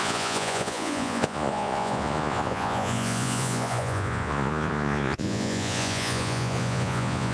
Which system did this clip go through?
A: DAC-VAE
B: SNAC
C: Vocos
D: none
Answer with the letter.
C